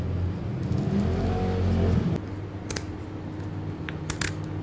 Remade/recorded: recorded